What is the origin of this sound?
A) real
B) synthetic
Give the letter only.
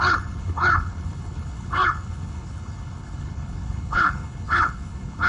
B